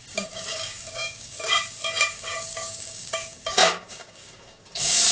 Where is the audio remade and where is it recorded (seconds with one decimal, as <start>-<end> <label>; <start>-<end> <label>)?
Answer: 0.0-5.1 remade